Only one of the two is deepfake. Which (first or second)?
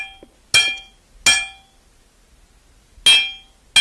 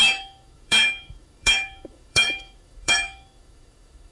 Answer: second